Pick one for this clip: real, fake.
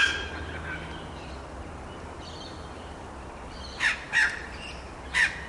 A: real